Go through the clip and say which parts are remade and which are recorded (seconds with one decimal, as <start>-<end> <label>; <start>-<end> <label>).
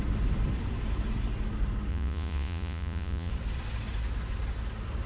0.0-1.9 recorded; 1.9-3.3 remade; 3.3-5.1 recorded